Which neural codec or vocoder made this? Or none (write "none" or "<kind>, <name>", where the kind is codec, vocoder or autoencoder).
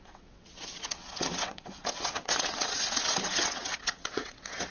vocoder, WaveNeXt